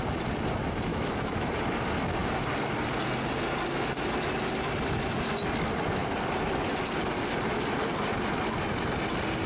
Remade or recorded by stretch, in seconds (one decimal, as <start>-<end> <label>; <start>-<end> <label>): 0.0-0.9 recorded; 0.9-1.6 remade; 1.6-9.5 recorded